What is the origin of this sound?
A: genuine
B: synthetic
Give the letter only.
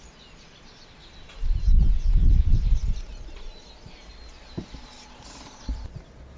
A